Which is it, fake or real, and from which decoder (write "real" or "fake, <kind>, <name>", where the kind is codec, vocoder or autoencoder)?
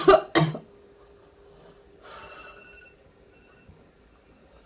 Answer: real